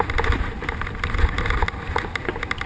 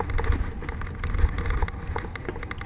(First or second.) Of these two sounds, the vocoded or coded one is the first